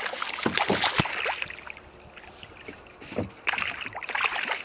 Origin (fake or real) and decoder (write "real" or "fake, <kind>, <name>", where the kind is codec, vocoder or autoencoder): real